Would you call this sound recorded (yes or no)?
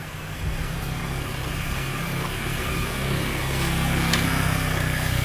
no